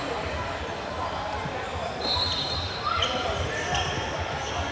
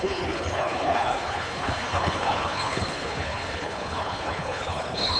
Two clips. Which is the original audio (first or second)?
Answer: first